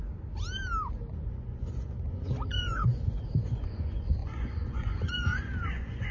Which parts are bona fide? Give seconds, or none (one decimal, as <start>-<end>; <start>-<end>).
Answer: 0.0-1.3